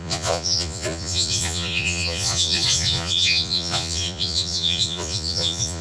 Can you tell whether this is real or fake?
fake